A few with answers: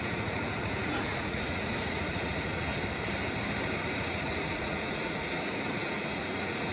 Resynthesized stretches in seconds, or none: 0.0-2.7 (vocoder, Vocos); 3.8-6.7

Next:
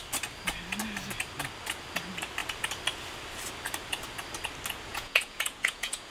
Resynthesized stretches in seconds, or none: 4.9-6.1 (vocoder, Vocos)

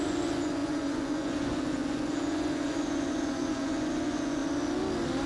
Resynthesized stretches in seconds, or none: 0.0-4.4 (vocoder, Vocos)

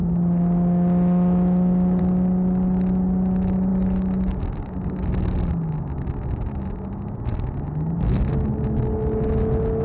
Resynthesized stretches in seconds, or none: none

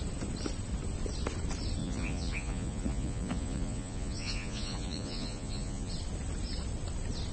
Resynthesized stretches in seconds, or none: 1.8-5.9 (vocoder, Vocos)

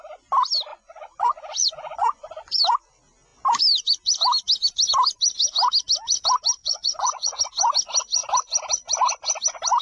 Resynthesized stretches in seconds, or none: 0.7-2.6 (vocoder, Vocos); 6.6-7.4